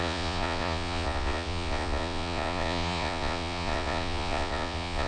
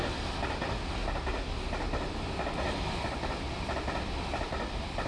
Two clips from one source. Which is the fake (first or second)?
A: first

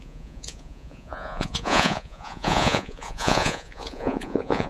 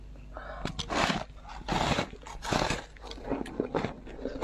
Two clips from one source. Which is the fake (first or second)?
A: first